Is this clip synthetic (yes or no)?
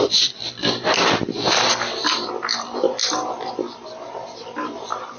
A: yes